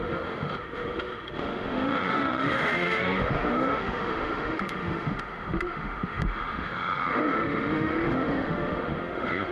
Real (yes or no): no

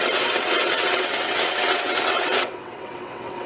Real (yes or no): no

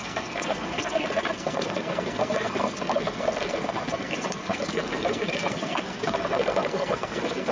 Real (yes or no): no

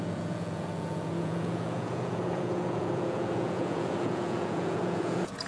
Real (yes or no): no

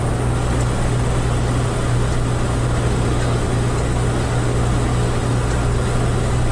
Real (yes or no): yes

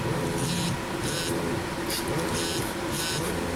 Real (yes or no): no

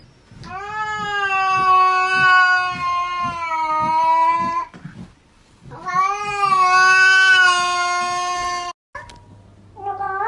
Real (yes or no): yes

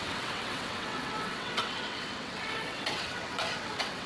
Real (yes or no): no